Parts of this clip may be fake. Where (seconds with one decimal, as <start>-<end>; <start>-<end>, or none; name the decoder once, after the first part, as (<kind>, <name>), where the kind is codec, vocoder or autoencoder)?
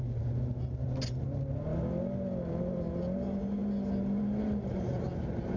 none